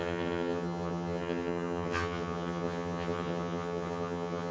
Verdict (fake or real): fake